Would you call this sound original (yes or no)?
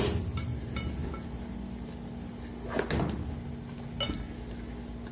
yes